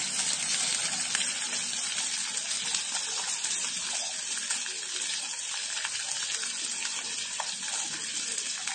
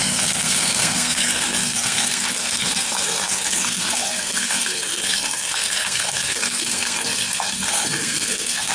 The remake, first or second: second